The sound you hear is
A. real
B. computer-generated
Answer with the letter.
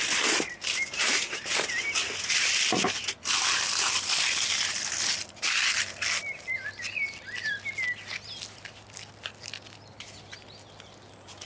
A